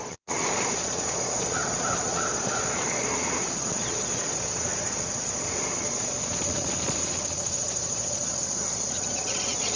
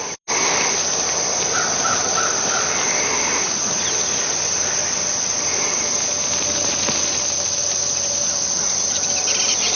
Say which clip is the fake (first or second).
first